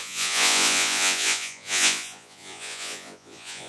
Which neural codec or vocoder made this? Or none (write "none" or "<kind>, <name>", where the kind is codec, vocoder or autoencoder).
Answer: vocoder, Vocos